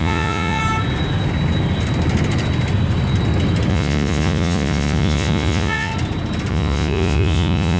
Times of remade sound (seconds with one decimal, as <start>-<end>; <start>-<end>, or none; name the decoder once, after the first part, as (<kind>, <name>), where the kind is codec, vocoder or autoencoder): 0.0-0.6 (vocoder, Vocos); 3.7-5.9; 6.5-7.8